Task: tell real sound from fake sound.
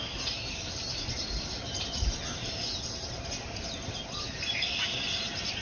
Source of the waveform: real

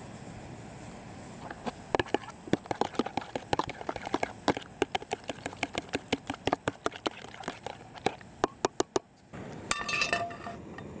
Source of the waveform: real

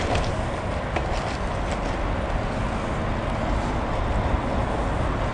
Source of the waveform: real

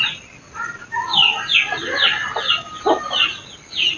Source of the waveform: real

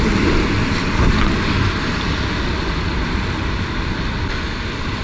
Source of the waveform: real